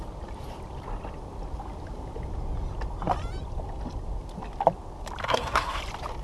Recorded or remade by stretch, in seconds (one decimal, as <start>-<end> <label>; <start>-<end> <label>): 0.0-5.2 recorded; 5.2-5.8 remade; 5.8-6.2 recorded